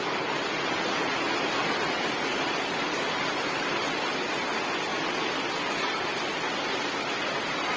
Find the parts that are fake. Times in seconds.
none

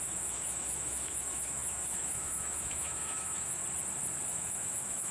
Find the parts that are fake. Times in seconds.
0.0-3.6 (autoencoder, DAC-VAE); 4.3-5.1

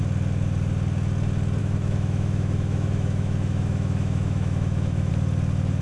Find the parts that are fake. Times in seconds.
1.6-5.1 (autoencoder, DAC-VAE)

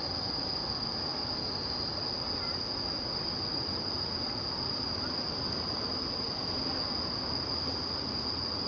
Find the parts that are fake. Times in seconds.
none

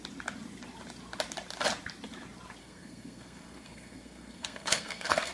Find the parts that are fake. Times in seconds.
2.6-5.3 (codec, SNAC)

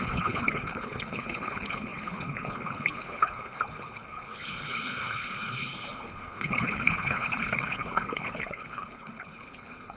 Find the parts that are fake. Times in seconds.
0.0-10.0 (codec, HILCodec)